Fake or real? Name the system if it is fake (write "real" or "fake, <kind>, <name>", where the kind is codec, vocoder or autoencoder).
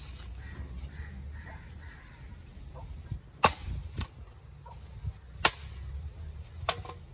real